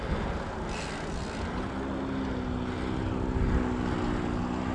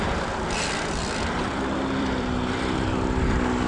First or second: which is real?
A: first